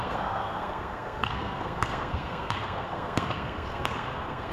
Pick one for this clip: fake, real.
fake